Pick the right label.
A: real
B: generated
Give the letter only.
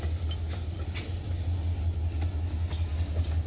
A